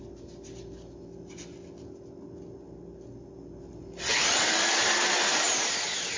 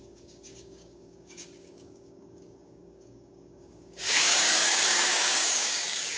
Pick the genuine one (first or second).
first